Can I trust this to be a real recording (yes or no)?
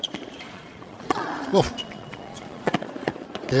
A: no